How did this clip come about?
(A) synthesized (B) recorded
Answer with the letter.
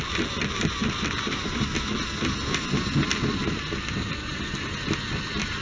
B